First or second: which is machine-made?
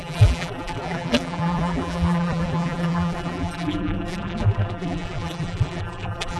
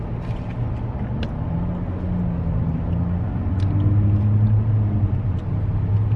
first